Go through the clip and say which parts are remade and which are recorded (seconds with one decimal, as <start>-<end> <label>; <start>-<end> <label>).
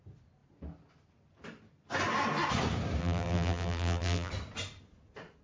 0.0-3.0 recorded; 3.0-4.3 remade; 4.3-5.4 recorded